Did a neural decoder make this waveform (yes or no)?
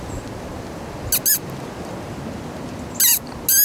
no